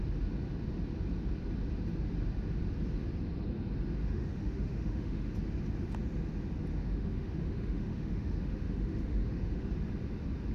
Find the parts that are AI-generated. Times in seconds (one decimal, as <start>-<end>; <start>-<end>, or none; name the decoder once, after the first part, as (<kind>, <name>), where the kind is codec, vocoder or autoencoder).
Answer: 4.0-5.3 (autoencoder, DAC-VAE); 6.7-9.7